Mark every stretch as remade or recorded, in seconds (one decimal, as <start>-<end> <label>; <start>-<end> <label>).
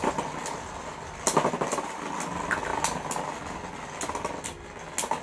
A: 0.0-5.2 recorded